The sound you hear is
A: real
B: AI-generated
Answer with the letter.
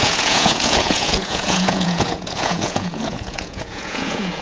B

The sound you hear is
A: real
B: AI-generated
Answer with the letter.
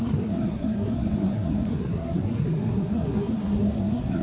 B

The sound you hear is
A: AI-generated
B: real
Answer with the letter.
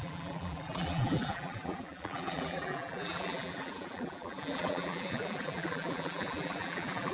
A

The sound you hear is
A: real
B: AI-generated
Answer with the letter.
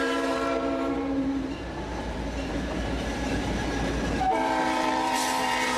B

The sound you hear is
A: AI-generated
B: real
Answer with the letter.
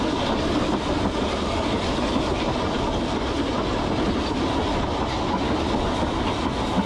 B